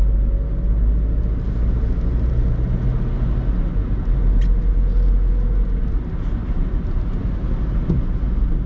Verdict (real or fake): real